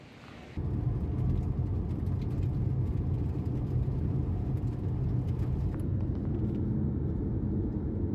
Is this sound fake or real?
real